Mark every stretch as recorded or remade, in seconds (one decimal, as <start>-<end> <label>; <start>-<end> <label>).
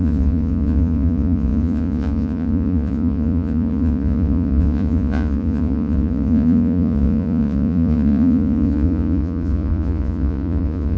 0.0-11.0 remade